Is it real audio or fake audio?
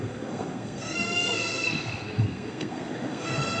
fake